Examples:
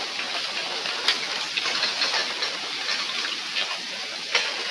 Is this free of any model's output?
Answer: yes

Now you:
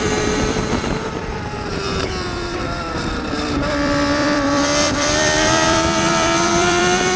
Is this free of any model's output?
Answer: no